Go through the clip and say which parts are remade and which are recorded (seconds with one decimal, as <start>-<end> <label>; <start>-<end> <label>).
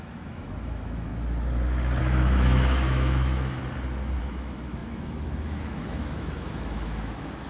0.0-1.1 remade; 1.1-2.0 recorded; 2.0-3.6 remade; 3.6-4.2 recorded; 4.2-7.5 remade